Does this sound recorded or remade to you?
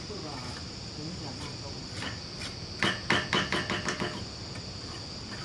recorded